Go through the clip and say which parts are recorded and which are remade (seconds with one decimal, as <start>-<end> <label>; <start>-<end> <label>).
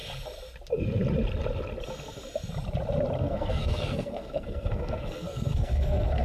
0.0-3.2 recorded; 3.2-6.2 remade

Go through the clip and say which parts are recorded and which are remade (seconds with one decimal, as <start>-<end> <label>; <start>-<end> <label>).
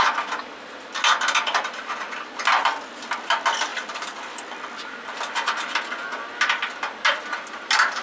0.0-8.0 recorded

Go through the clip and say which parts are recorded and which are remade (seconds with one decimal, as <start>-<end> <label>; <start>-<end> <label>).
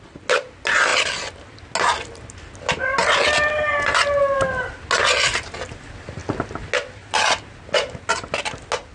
0.0-8.9 recorded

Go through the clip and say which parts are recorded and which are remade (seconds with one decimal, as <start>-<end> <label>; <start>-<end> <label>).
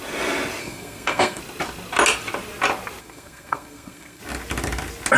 0.0-0.6 recorded; 0.6-1.4 remade; 1.4-3.0 recorded; 3.0-4.2 remade; 4.2-5.2 recorded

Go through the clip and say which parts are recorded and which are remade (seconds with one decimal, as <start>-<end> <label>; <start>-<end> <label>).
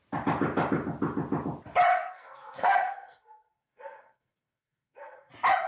0.0-1.9 recorded; 1.9-5.3 remade; 5.3-5.7 recorded